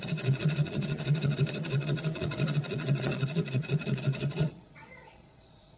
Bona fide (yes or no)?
no